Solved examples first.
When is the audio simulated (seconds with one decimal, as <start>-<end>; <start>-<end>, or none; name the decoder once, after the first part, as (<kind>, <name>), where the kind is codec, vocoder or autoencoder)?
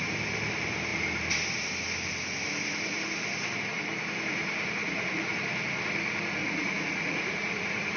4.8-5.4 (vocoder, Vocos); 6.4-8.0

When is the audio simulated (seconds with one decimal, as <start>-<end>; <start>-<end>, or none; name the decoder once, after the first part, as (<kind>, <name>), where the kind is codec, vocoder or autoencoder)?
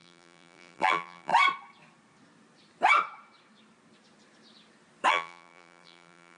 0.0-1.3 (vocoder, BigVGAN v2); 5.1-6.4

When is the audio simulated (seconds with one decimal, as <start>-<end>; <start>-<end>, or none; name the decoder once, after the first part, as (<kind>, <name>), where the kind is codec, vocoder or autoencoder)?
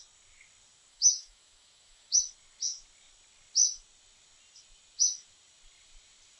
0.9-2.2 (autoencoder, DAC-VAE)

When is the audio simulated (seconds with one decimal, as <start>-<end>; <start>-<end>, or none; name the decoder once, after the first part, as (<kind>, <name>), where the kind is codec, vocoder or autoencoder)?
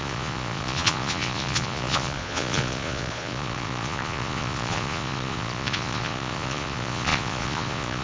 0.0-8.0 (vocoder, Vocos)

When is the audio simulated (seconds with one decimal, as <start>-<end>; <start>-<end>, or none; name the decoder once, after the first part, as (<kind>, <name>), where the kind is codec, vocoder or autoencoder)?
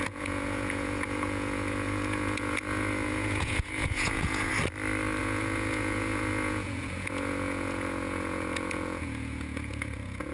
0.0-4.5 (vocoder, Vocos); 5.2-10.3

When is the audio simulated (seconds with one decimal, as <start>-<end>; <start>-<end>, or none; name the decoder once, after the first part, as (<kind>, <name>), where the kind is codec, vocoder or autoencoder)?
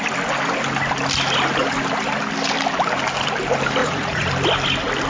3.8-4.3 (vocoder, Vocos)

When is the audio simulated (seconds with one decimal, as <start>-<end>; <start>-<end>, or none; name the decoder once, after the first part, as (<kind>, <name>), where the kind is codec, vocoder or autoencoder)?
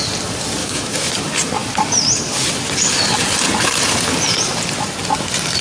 0.6-1.1 (autoencoder, DAC-VAE)